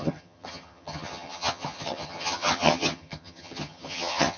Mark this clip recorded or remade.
remade